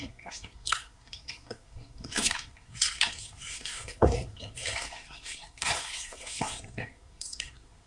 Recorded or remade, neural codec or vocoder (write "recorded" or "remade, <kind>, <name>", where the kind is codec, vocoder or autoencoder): remade, codec, SNAC